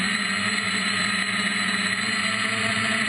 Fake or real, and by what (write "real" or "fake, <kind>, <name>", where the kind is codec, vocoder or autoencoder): fake, vocoder, BigVGAN v2